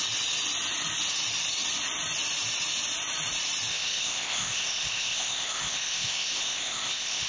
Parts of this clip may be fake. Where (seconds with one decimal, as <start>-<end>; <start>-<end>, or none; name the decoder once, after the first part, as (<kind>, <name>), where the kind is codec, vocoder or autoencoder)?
3.7-7.3 (codec, ZipCodec)